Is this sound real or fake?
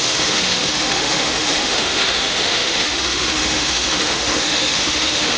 fake